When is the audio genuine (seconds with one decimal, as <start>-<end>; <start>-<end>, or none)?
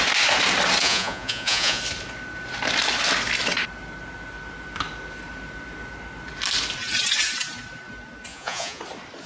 0.0-0.8; 1.8-8.3; 8.8-9.3